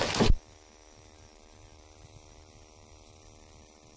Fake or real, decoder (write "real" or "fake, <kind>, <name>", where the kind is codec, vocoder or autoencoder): real